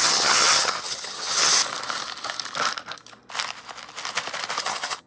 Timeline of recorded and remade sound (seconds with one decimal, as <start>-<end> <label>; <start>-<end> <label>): 0.0-1.5 remade; 1.5-4.6 recorded; 4.6-5.1 remade